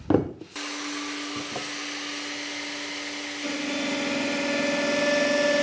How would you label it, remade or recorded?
recorded